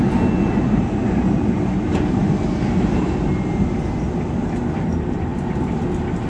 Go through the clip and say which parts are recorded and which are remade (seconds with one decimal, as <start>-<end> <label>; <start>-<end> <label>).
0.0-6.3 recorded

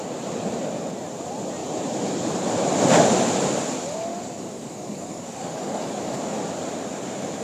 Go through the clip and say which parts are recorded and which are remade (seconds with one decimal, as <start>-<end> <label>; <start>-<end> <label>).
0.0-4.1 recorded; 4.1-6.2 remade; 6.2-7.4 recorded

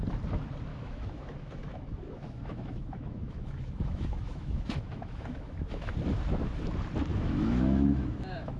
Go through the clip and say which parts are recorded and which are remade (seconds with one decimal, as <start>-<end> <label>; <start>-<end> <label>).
0.0-0.7 recorded; 0.7-5.9 remade; 5.9-7.1 recorded; 7.1-8.6 remade

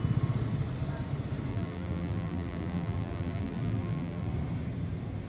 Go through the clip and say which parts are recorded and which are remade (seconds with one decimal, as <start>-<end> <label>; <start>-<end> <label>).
0.0-1.5 recorded; 1.5-4.3 remade; 4.3-5.3 recorded